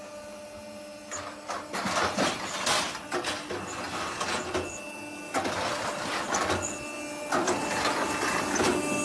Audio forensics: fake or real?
real